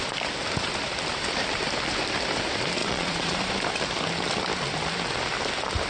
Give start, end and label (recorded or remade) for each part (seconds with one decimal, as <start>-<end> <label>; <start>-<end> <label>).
0.0-2.8 recorded; 2.8-3.4 remade; 3.4-5.9 recorded